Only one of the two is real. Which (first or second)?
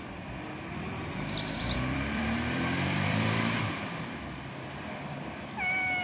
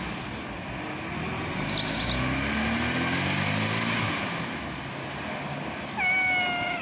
second